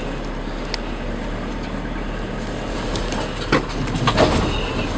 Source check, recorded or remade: recorded